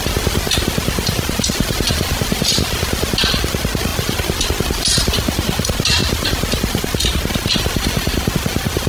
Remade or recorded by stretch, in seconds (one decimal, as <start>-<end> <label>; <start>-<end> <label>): 0.0-8.9 recorded